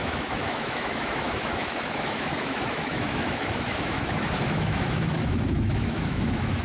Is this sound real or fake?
fake